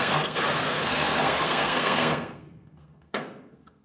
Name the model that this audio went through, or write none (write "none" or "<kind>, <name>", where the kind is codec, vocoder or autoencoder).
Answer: codec, SNAC